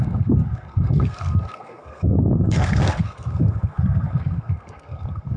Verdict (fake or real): fake